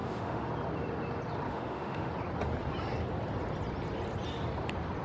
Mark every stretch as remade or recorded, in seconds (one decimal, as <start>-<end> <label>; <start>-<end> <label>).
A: 0.0-0.5 remade; 0.5-1.5 recorded; 1.5-2.1 remade; 2.1-5.0 recorded